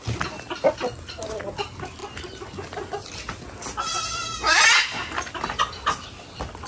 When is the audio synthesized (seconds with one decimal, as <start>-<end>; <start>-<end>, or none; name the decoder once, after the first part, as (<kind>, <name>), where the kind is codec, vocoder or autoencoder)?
none